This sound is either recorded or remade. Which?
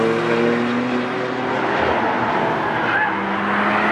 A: recorded